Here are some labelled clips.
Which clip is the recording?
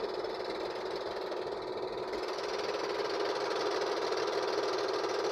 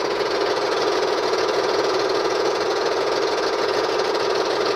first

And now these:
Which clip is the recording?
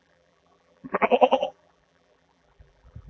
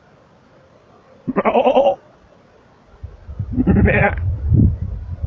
second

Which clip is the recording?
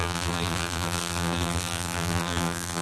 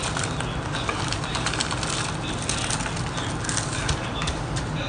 second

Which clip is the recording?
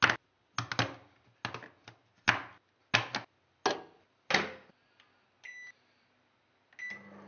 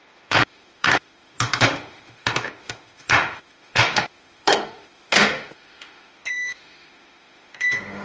first